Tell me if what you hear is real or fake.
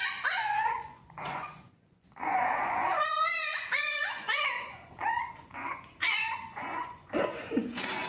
fake